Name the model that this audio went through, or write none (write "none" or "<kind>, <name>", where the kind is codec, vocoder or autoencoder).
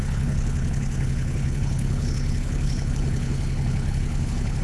codec, HILCodec